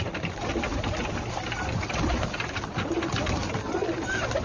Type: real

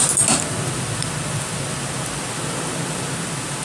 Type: real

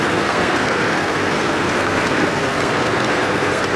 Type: fake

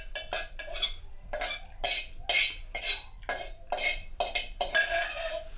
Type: real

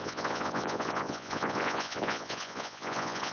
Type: fake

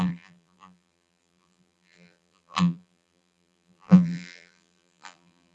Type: fake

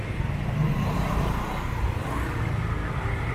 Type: real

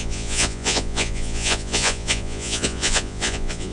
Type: fake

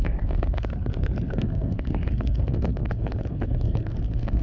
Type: fake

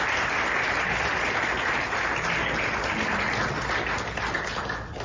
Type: real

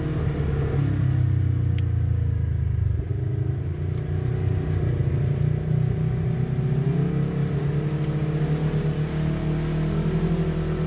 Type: real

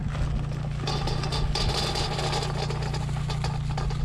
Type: real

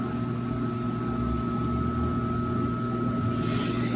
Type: real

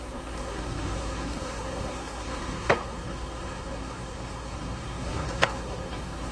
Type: fake